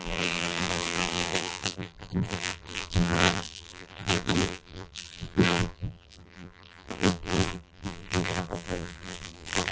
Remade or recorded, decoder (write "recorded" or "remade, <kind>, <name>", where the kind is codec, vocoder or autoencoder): remade, vocoder, BigVGAN v2